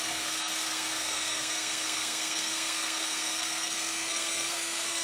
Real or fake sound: fake